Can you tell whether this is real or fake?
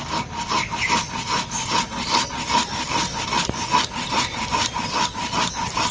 real